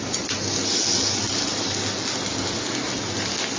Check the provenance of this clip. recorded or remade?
recorded